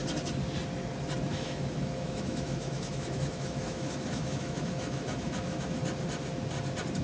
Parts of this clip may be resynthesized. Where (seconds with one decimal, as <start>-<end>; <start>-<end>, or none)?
1.3-5.8